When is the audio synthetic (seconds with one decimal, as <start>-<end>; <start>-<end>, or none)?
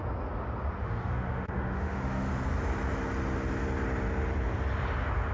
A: 0.8-2.3